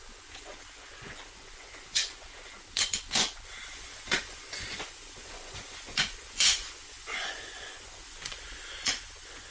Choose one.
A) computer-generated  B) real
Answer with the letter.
A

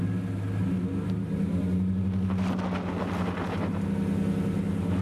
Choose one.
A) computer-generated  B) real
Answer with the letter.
B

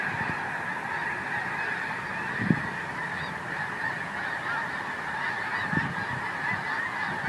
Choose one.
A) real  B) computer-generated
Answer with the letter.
A